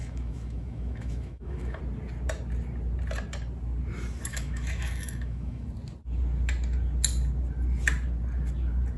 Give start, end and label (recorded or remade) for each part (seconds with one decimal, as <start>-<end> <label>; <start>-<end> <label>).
0.0-1.8 remade; 1.8-4.3 recorded; 4.3-5.7 remade; 5.7-9.0 recorded